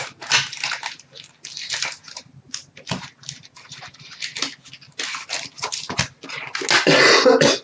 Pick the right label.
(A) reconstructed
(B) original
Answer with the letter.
B